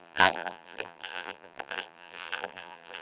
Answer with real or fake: fake